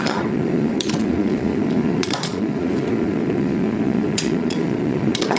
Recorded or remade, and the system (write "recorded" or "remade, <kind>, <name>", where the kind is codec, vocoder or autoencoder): remade, vocoder, Vocos